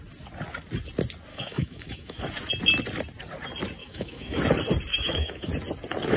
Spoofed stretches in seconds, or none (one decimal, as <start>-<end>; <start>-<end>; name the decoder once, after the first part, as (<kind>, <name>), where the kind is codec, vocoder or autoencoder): 1.3-2.2 (autoencoder, DAC-VAE); 3.8-4.4; 4.9-5.5